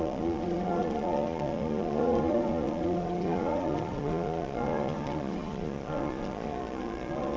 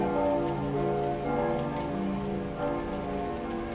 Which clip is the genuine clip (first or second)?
second